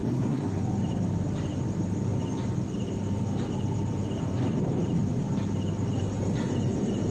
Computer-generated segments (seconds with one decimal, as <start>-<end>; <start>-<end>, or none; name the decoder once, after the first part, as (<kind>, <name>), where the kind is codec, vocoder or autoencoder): 0.0-0.6 (codec, SNAC)